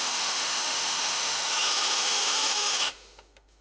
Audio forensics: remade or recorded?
remade